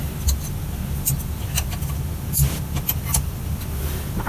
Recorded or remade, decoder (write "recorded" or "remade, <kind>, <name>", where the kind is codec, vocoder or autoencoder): recorded